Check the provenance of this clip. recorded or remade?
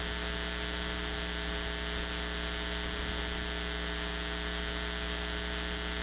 recorded